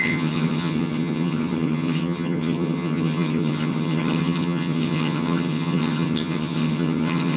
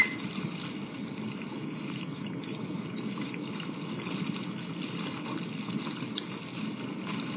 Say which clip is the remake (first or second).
first